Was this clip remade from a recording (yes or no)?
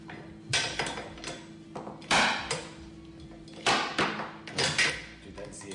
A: no